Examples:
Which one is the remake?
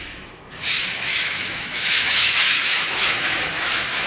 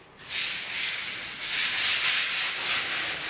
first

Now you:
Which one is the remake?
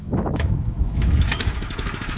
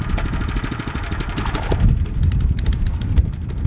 first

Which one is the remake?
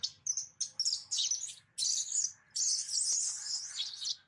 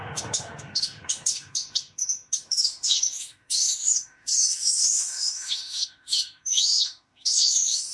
second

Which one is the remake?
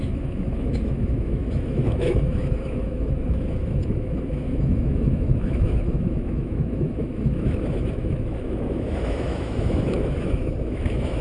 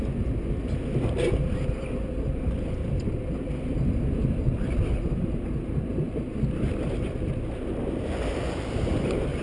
first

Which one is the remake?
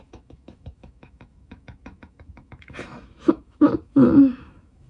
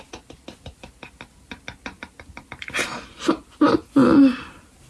first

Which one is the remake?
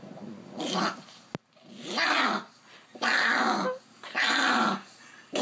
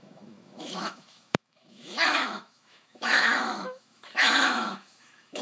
second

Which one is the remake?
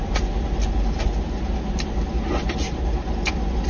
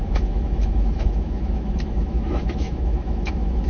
second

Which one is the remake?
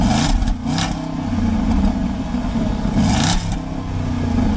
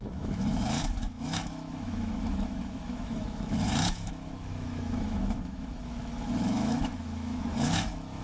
second